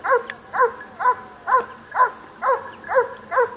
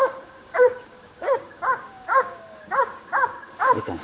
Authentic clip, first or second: first